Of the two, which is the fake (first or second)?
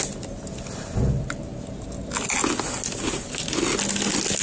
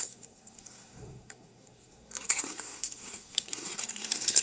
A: second